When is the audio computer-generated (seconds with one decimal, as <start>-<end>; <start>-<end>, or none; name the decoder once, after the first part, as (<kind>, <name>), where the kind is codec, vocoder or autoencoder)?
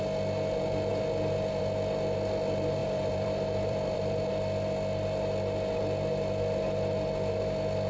2.8-4.3 (vocoder, BigVGAN v2)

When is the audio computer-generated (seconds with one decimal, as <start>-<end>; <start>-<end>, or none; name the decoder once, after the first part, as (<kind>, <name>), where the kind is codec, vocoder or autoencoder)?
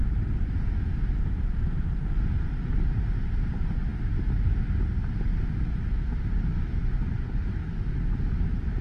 1.0-3.9 (vocoder, BigVGAN v2); 8.3-8.8